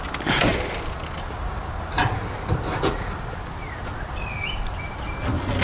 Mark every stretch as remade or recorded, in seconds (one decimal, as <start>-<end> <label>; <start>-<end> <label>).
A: 0.0-5.6 recorded